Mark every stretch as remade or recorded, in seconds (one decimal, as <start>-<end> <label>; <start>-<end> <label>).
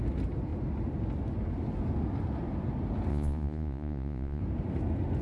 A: 0.0-3.1 recorded; 3.1-4.4 remade; 4.4-5.2 recorded